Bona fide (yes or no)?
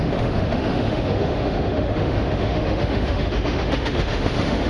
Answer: no